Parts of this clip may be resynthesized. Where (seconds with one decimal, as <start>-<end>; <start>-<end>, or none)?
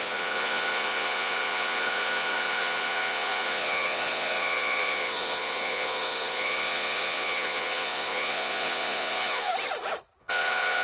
0.0-9.5; 10.2-10.8